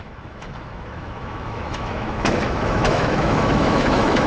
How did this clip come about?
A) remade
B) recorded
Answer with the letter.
A